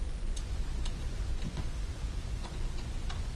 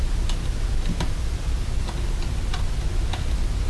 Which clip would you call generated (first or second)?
first